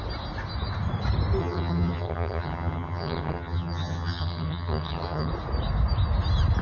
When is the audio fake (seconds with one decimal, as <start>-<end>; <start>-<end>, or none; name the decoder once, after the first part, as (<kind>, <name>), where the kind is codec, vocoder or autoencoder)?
1.4-5.3 (vocoder, HiFi-GAN)